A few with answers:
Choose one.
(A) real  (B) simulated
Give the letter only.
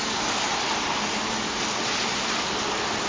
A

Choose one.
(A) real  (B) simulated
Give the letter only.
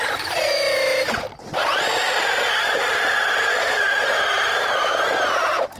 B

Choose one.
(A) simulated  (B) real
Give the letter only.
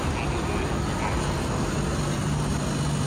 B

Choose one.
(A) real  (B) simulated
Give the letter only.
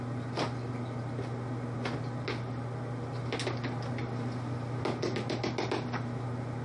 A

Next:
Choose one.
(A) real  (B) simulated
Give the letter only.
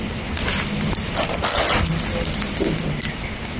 A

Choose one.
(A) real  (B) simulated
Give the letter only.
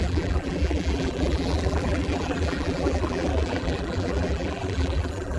B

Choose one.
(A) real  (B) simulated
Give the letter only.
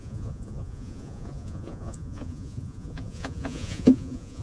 B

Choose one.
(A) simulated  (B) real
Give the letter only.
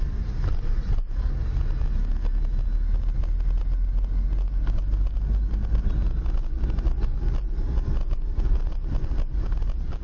B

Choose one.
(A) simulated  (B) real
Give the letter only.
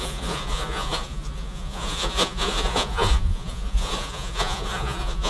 A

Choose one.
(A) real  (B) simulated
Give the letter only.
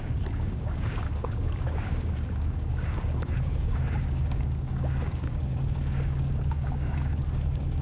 B